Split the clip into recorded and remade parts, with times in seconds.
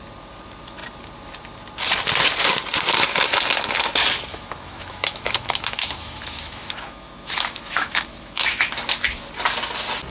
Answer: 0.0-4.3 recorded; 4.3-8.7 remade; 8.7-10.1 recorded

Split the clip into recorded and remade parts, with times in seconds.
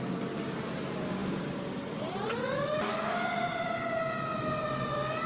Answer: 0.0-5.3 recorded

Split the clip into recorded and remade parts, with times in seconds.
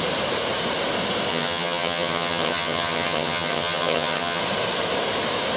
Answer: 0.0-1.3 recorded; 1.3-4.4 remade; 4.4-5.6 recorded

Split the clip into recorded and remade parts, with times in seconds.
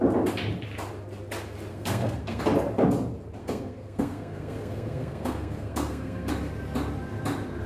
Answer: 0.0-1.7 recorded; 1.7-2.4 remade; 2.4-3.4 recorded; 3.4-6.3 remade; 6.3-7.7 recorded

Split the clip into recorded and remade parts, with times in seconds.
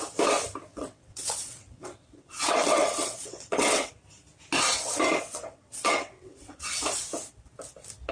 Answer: 0.0-0.7 recorded; 0.7-3.9 remade; 3.9-5.3 recorded; 5.3-6.8 remade; 6.8-8.1 recorded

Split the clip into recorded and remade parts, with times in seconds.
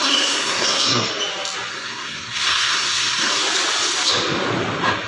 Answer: 0.0-1.1 remade; 1.1-1.7 recorded; 1.7-3.4 remade; 3.4-5.1 recorded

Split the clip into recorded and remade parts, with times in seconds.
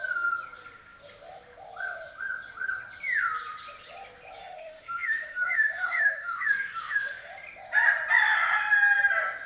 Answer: 0.0-4.4 recorded; 4.4-7.3 remade; 7.3-9.5 recorded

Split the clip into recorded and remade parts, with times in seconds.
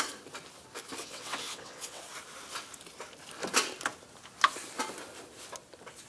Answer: 0.0-1.0 recorded; 1.0-2.0 remade; 2.0-6.1 recorded